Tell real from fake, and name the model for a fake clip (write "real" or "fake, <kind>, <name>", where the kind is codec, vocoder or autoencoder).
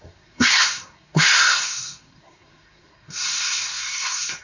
fake, codec, SNAC